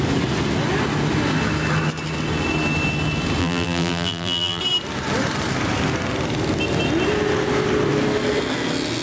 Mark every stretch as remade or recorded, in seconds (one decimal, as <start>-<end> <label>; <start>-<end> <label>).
0.0-3.4 recorded; 3.4-4.6 remade; 4.6-9.0 recorded